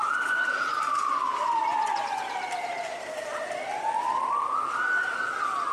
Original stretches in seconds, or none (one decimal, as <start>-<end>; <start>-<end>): 0.0-5.7